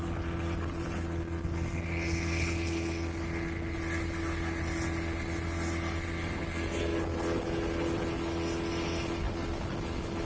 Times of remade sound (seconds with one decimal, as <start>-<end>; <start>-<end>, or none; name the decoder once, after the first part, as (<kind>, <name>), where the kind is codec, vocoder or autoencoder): none